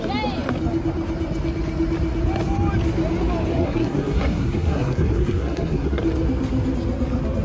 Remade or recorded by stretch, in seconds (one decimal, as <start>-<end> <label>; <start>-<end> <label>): 0.0-3.5 recorded; 3.5-6.0 remade; 6.0-7.4 recorded